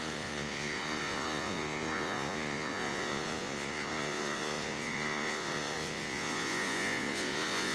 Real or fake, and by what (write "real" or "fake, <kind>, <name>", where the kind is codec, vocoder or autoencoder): fake, vocoder, Vocos